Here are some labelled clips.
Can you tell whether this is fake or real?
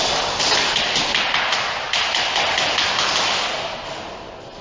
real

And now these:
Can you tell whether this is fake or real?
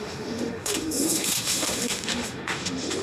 fake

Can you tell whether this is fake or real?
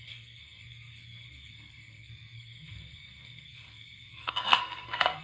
fake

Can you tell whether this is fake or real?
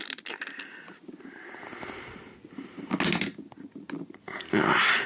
real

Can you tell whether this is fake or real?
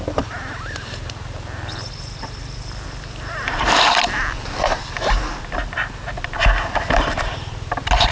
real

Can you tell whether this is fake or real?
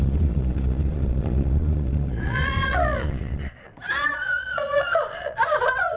fake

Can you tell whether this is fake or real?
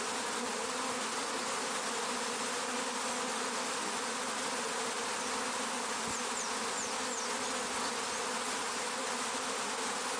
real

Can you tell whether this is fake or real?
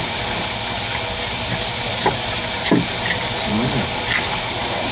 real